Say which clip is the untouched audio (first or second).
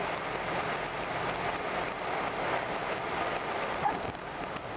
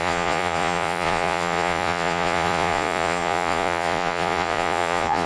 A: first